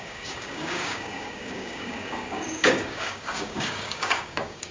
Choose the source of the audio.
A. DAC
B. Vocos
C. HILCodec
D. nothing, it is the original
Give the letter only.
A